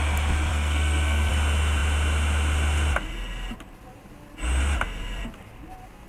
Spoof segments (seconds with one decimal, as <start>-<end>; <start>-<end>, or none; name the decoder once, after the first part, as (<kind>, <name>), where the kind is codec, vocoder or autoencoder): 0.5-1.3 (codec, SNAC)